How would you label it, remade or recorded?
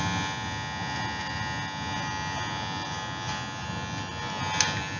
recorded